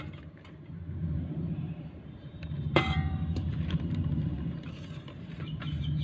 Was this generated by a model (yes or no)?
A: yes